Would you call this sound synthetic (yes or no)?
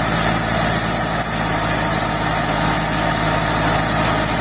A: no